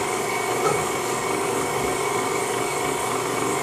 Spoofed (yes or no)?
yes